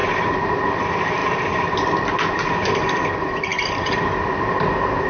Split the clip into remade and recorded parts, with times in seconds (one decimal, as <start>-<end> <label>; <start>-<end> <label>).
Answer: 0.0-5.1 recorded